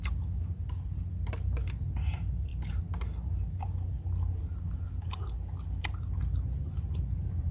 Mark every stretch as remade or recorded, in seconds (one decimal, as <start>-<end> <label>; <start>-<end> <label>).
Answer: 0.0-7.5 recorded